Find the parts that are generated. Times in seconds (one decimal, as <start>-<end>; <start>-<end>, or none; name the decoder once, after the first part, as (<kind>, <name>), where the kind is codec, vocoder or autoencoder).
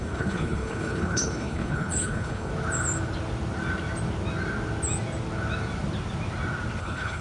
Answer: 0.0-2.5 (codec, HILCodec); 6.8-7.2